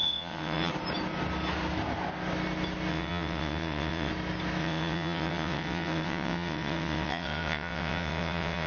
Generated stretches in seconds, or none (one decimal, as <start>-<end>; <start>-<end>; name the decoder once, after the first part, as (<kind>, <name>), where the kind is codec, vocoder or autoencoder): 0.0-0.7 (vocoder, WaveNeXt); 2.9-4.1; 4.6-8.7